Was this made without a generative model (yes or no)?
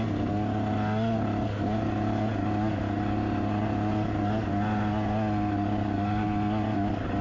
yes